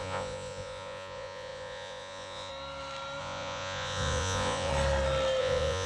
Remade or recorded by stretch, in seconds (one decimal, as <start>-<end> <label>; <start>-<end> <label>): 0.0-2.5 remade; 2.5-3.2 recorded; 3.2-4.7 remade; 4.7-5.4 recorded; 5.4-5.9 remade